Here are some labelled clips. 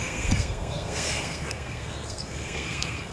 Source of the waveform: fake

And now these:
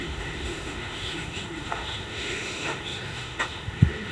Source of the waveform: fake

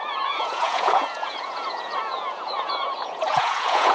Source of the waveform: fake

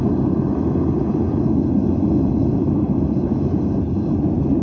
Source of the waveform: real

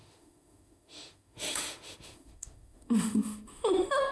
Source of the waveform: fake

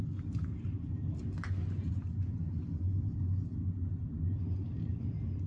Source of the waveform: real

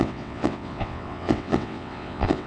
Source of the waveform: fake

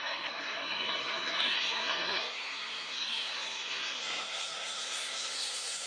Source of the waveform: fake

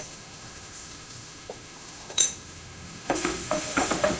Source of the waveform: fake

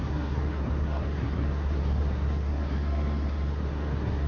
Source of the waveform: fake